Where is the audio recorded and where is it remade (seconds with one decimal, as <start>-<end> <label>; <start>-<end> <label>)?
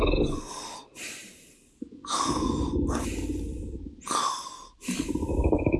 0.0-5.8 recorded